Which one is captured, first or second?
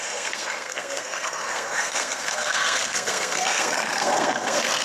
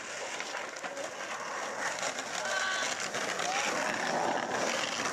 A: second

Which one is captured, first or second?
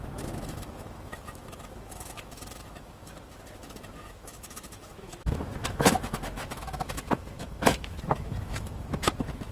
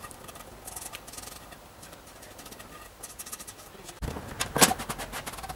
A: second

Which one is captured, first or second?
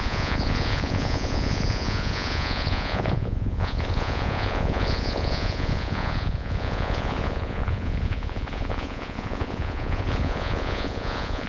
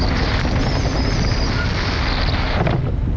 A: second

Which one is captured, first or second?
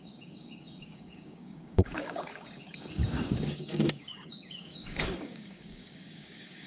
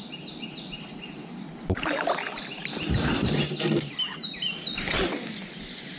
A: second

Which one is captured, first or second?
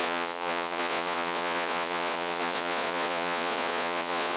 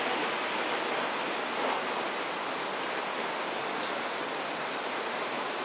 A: second